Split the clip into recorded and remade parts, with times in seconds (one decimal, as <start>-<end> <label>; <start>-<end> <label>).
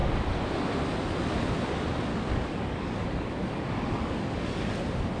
0.0-2.1 recorded; 2.1-4.7 remade; 4.7-5.2 recorded